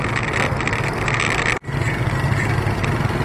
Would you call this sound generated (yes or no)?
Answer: no